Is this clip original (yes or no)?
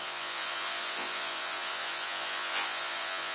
no